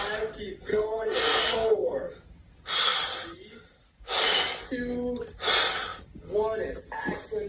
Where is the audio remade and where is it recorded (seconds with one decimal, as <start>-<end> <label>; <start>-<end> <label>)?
0.0-0.7 recorded; 0.7-2.1 remade; 2.1-7.5 recorded